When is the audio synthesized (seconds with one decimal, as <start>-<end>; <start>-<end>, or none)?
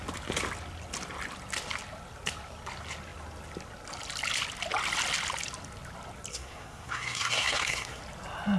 6.3-8.0